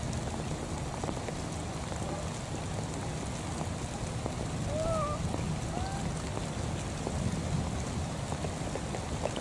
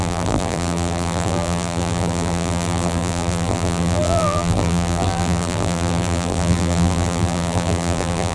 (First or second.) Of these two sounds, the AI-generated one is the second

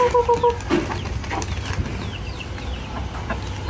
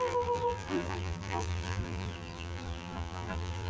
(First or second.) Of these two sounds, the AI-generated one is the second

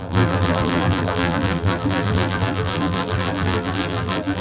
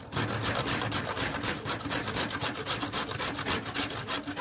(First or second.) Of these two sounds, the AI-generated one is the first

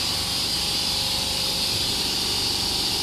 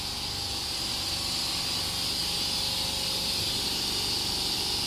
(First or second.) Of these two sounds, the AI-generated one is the first